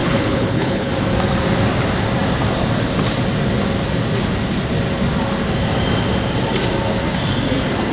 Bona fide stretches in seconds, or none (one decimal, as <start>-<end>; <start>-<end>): 0.9-7.9